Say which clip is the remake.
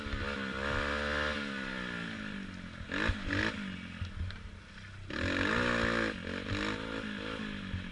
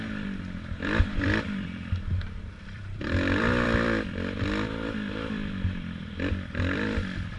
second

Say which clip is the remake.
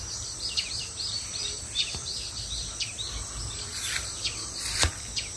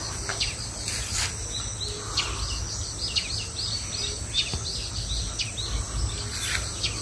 first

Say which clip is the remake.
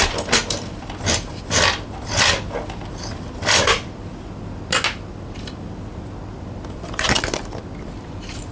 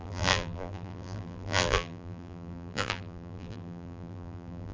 second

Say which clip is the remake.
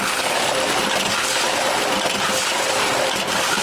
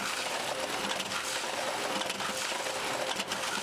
first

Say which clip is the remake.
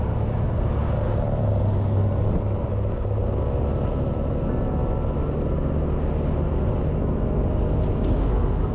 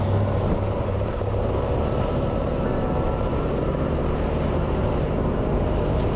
second